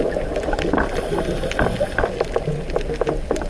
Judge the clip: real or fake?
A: real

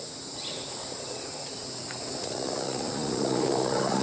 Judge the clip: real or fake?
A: fake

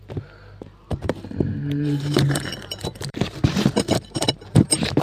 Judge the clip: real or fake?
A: fake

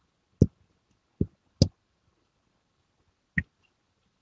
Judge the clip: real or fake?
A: real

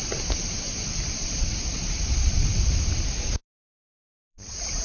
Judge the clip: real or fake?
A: real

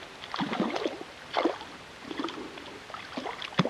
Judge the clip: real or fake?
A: real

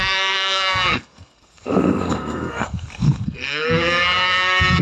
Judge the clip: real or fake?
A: fake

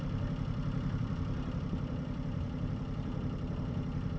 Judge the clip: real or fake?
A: fake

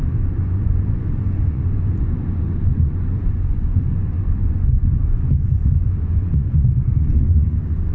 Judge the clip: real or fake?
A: fake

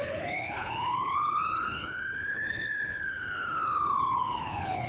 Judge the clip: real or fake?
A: fake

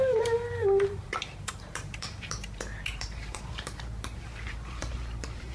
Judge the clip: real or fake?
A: fake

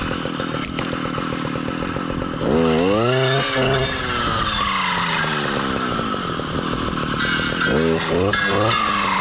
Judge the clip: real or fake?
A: real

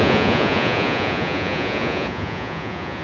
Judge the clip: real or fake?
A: fake